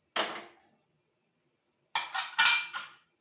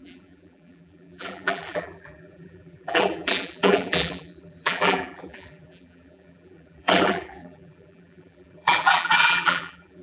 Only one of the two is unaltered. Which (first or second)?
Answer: first